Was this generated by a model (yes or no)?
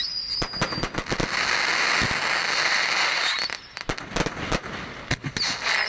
no